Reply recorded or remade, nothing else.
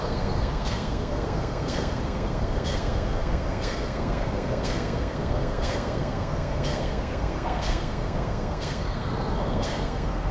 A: remade